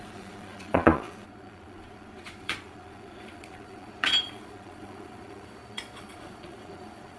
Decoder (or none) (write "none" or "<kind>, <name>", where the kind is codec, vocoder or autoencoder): vocoder, Vocos